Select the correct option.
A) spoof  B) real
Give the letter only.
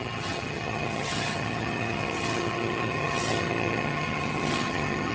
A